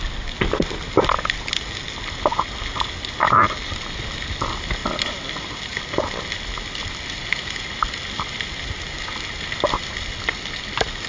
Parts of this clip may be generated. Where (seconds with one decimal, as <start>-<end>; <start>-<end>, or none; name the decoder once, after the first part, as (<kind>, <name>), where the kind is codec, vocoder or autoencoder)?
none